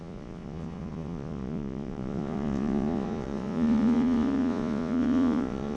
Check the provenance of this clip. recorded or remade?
remade